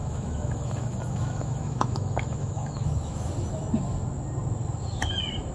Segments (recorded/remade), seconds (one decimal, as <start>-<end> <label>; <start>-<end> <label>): 0.0-3.3 remade; 3.3-5.5 recorded